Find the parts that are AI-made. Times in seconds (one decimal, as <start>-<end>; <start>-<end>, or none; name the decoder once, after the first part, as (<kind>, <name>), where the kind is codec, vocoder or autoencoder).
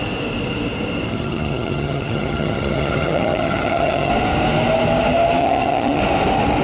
1.1-4.1 (vocoder, HiFi-GAN); 5.4-6.0